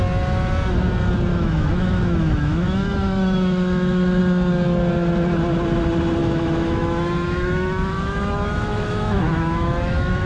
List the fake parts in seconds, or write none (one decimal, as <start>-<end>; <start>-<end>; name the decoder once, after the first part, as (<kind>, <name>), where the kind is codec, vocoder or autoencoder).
1.3-4.2 (autoencoder, DAC-VAE); 6.2-10.3